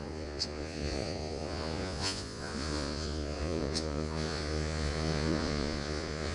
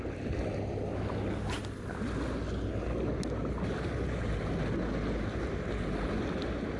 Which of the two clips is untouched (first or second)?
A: second